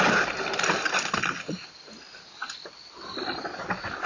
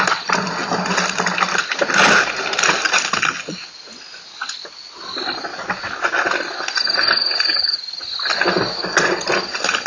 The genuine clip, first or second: second